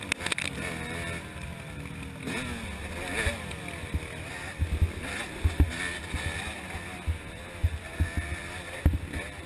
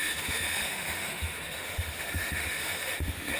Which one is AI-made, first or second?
second